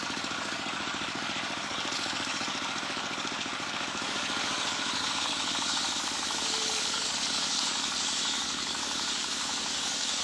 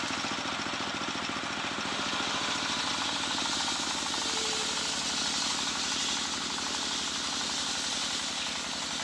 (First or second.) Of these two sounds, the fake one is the first